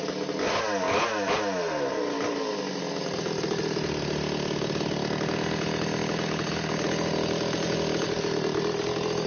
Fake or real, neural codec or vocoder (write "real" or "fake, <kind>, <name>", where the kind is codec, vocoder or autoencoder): real